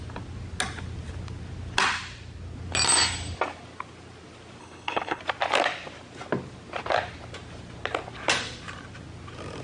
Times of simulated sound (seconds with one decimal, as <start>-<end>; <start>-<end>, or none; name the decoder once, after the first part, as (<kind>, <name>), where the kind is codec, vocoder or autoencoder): 4.6-5.2 (codec, HILCodec)